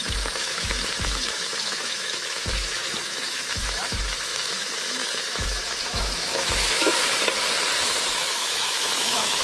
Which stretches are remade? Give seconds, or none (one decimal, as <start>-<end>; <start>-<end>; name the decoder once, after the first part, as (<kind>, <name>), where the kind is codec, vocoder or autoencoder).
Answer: 0.0-7.0 (autoencoder, DAC-VAE); 8.1-9.4